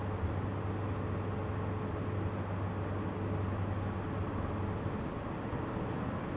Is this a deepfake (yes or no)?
no